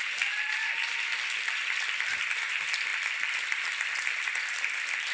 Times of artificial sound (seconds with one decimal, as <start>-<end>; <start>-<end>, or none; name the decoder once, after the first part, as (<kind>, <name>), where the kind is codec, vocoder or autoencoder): 1.6-2.4 (vocoder, BigVGAN v2); 2.9-4.0